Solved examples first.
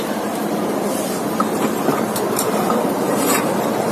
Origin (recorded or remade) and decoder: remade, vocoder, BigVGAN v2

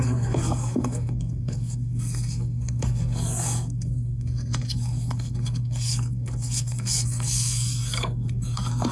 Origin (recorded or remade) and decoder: remade, codec, SNAC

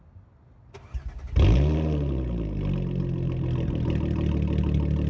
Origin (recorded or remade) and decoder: recorded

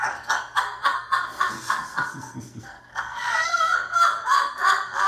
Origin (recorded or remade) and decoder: remade, codec, SNAC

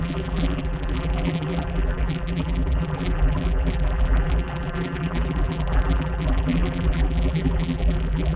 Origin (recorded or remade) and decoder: remade, vocoder, BigVGAN v2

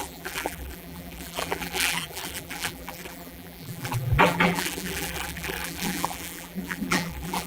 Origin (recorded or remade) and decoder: remade, vocoder, BigVGAN v2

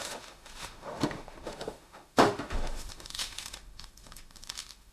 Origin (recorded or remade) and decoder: remade, autoencoder, DAC-VAE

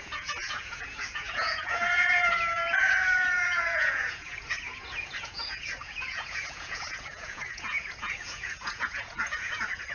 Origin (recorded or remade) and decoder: remade, vocoder, Vocos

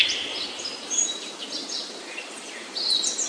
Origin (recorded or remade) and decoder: remade, vocoder, BigVGAN v2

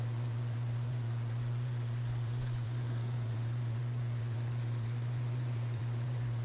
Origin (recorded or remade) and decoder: remade, vocoder, Vocos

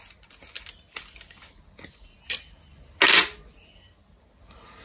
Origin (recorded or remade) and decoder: recorded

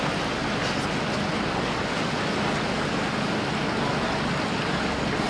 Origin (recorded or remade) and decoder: recorded